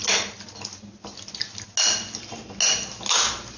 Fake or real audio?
real